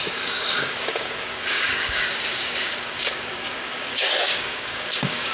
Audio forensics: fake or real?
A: fake